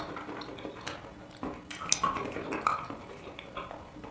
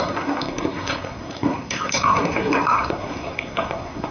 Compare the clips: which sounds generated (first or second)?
second